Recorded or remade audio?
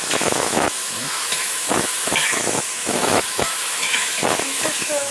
remade